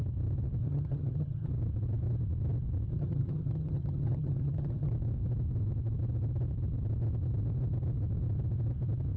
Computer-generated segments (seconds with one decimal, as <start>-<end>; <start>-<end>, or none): 0.6-1.5; 2.9-4.9